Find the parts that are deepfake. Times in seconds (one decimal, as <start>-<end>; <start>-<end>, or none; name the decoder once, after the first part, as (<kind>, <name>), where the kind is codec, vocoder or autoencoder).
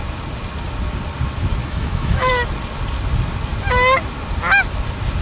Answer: 1.6-2.3 (autoencoder, DAC-VAE)